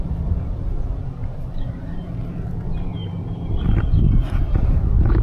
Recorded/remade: remade